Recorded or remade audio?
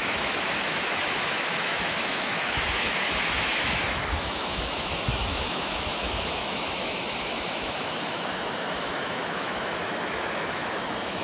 remade